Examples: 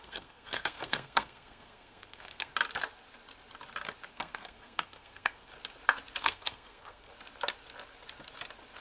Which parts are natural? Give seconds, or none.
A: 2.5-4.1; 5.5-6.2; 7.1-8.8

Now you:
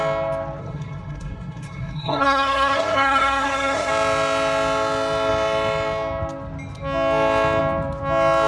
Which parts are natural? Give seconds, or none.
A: 0.0-0.6; 3.9-8.5

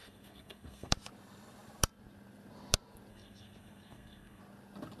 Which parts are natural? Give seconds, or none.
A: 0.9-3.1; 4.4-5.0

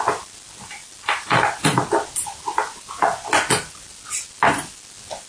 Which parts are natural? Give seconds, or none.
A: 0.0-5.3